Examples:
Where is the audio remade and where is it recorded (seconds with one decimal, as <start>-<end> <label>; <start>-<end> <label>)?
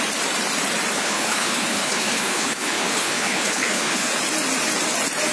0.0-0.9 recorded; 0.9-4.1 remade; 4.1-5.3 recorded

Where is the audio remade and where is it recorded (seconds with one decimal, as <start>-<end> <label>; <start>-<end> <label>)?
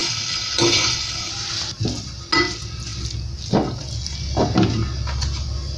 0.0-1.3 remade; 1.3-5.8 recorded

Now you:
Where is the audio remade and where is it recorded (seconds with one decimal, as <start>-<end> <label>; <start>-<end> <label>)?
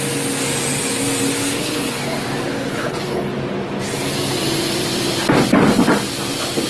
0.0-1.3 recorded; 1.3-2.0 remade; 2.0-2.7 recorded; 2.7-3.3 remade; 3.3-6.7 recorded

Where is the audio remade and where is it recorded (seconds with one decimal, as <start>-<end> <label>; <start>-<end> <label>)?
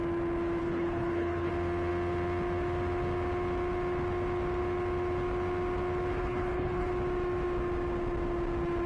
0.0-0.6 recorded; 0.6-1.5 remade; 1.5-6.1 recorded; 6.1-6.9 remade; 6.9-8.9 recorded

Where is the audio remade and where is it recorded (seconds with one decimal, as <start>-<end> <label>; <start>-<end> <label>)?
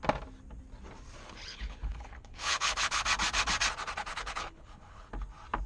0.0-1.4 recorded; 1.4-3.0 remade; 3.0-4.1 recorded; 4.1-5.1 remade; 5.1-5.7 recorded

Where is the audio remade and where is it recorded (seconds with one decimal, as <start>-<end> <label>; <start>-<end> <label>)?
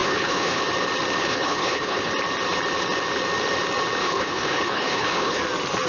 0.0-0.6 remade; 0.6-1.2 recorded; 1.2-2.1 remade; 2.1-4.0 recorded; 4.0-5.4 remade; 5.4-5.9 recorded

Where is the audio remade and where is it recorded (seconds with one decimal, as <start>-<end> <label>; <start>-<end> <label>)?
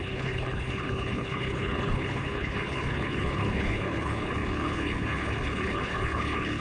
0.0-6.6 remade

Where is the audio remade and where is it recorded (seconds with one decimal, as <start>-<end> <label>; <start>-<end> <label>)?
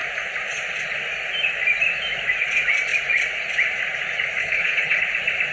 0.0-4.4 recorded; 4.4-5.0 remade; 5.0-5.5 recorded